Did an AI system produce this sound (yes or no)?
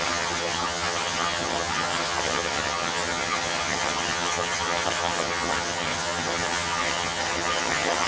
yes